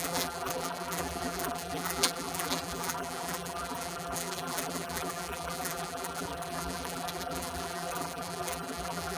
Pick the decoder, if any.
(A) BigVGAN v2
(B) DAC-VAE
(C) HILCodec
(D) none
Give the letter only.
A